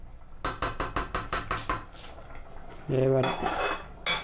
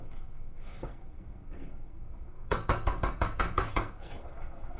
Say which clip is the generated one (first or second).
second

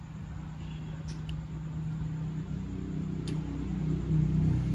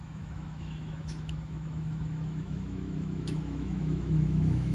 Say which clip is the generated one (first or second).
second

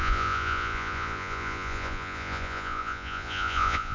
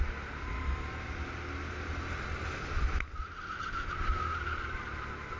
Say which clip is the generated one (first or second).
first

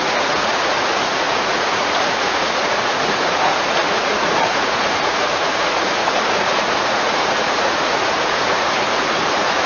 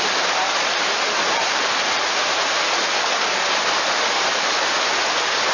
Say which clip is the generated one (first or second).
first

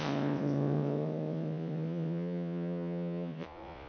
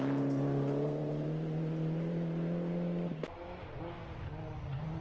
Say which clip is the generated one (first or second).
first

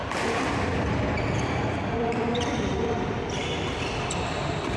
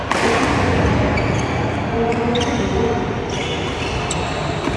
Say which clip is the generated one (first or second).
first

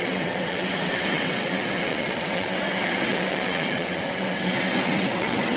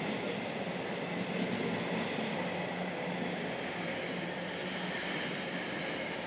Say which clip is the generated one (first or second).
first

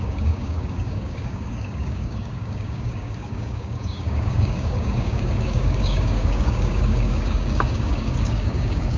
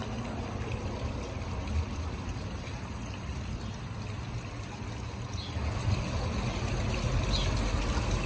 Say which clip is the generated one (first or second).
first